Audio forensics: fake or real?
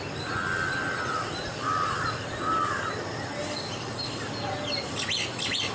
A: real